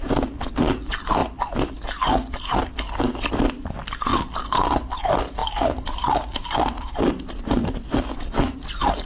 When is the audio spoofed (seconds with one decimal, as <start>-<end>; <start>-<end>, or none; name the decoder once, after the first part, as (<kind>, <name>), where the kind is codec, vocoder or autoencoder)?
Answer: 0.0-1.2 (vocoder, BigVGAN v2); 3.3-4.1; 5.0-9.1